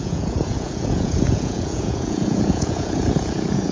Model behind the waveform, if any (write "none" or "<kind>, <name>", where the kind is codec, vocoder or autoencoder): vocoder, Vocos